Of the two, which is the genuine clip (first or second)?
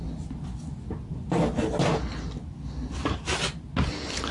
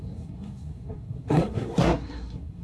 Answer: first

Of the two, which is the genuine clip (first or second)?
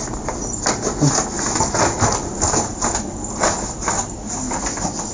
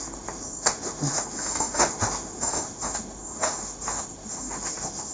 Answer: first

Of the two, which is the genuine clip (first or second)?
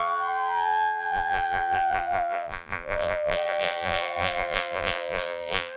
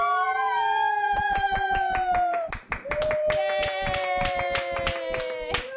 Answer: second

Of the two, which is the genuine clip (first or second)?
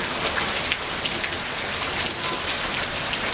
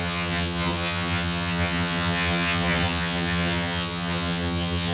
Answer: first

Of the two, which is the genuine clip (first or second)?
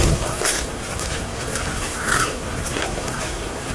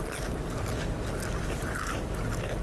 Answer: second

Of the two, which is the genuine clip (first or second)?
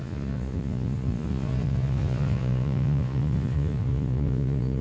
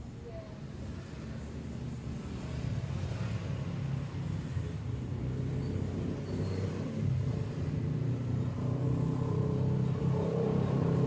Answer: second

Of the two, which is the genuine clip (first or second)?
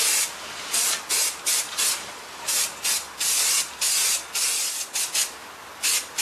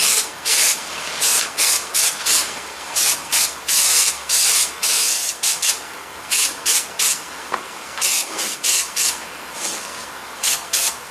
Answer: first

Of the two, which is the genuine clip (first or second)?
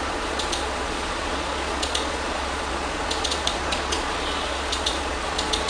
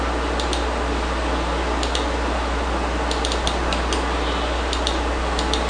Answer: second